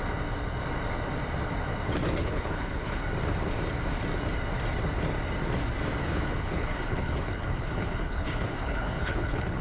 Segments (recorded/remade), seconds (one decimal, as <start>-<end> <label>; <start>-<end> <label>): 0.0-2.2 recorded; 2.2-3.0 remade; 3.0-6.0 recorded; 6.0-9.6 remade